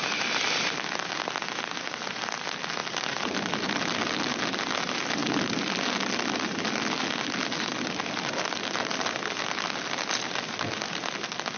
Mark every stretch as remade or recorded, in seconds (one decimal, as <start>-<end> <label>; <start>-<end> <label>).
0.0-2.8 recorded; 2.8-4.4 remade; 4.4-11.6 recorded